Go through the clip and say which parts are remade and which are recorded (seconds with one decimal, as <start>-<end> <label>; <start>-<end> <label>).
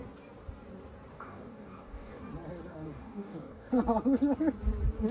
0.0-1.1 recorded; 1.1-2.2 remade; 2.2-2.7 recorded; 2.7-3.7 remade; 3.7-5.1 recorded